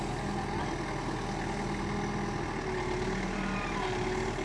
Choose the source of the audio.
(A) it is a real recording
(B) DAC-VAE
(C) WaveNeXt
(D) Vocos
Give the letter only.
A